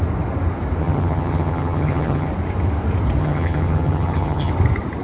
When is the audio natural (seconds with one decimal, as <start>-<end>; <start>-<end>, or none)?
0.0-0.8; 2.3-3.2; 4.5-5.0